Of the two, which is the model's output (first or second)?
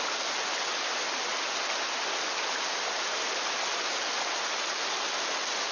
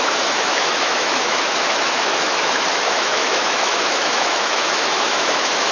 second